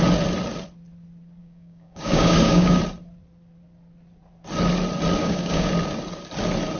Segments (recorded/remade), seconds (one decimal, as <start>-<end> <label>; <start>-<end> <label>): 0.0-1.4 recorded; 1.4-2.8 remade; 2.8-5.2 recorded; 5.2-5.7 remade; 5.7-6.8 recorded